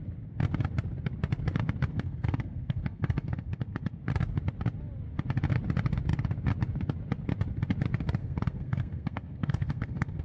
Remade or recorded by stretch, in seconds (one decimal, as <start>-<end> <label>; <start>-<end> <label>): 0.0-1.9 recorded; 1.9-4.0 remade; 4.0-8.2 recorded; 8.2-10.2 remade